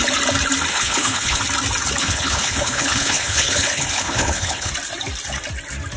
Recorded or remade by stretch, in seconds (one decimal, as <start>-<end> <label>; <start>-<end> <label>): 0.0-0.7 recorded; 0.7-1.4 remade; 1.4-2.0 recorded; 2.0-4.7 remade; 4.7-6.0 recorded